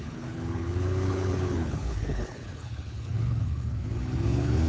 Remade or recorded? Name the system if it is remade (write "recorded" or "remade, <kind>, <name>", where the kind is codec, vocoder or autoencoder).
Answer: remade, codec, HILCodec